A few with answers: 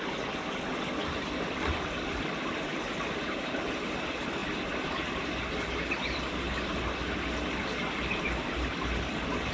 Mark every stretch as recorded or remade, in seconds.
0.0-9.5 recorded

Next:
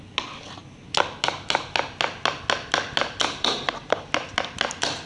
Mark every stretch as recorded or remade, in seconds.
0.0-5.1 recorded

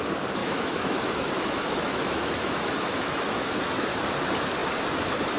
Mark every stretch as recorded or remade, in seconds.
0.0-0.4 recorded; 0.4-3.6 remade; 3.6-5.4 recorded

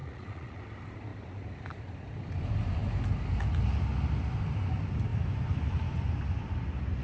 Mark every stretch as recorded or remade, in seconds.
0.0-0.6 remade; 0.6-7.0 recorded

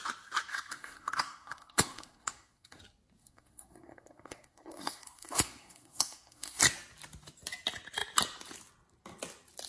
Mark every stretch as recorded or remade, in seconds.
0.0-0.5 recorded; 0.5-2.8 remade; 2.8-3.2 recorded; 3.2-6.6 remade; 6.6-9.7 recorded